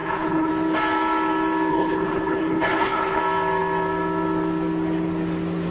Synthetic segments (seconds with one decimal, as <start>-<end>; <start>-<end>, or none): 0.0-0.5; 1.7-3.2